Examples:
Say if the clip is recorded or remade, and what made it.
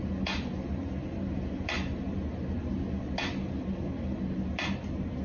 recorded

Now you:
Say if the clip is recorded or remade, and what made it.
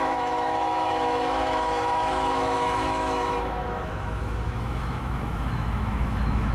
remade, autoencoder, DAC-VAE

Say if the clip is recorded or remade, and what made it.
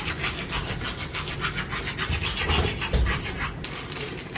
recorded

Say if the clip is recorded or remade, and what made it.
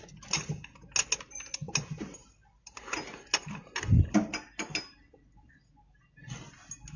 recorded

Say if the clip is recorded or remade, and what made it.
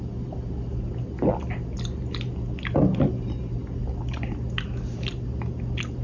recorded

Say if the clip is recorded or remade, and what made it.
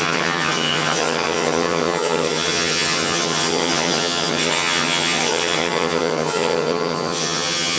remade, vocoder, HiFi-GAN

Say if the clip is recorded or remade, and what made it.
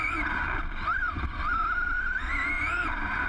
remade, vocoder, BigVGAN v2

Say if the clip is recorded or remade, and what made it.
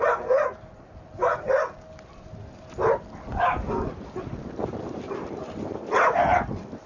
recorded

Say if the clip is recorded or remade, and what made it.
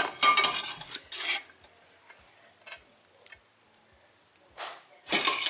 recorded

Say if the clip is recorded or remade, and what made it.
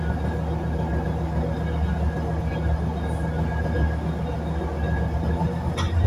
recorded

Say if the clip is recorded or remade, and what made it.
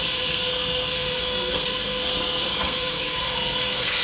remade, codec, SNAC